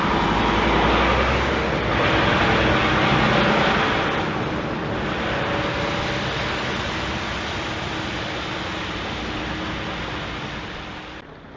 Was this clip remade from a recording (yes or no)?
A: no